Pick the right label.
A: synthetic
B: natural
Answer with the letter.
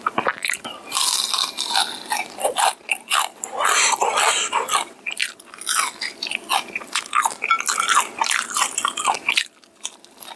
B